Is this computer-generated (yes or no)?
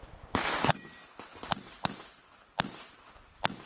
no